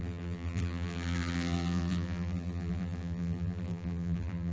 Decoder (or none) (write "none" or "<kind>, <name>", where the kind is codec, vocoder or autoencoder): vocoder, BigVGAN v2